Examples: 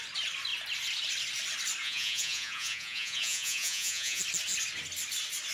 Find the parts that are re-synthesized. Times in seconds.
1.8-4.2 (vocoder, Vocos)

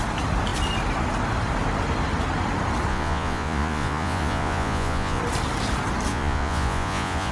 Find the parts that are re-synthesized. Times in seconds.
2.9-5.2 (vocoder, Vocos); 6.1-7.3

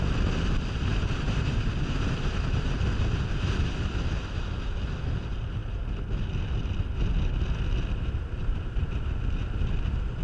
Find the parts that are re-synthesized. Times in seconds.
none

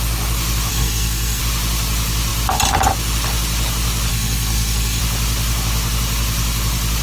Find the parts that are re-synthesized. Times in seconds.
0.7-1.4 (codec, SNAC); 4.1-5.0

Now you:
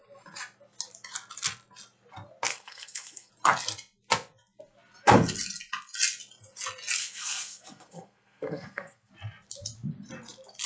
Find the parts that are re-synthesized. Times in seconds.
2.5-3.3 (codec, SNAC); 7.0-9.1

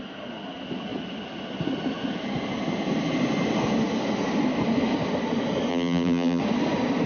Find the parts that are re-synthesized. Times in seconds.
5.7-6.4 (vocoder, BigVGAN v2)

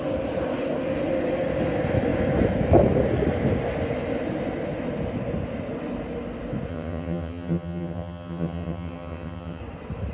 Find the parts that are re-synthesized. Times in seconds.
6.7-9.6 (vocoder, HiFi-GAN)